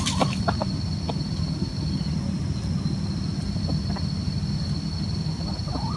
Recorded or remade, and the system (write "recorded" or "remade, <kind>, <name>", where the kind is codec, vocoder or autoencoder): recorded